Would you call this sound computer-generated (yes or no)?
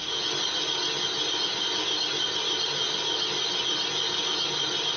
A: no